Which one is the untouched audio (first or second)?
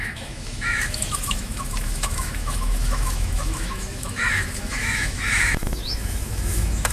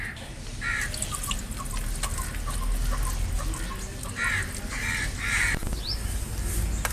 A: second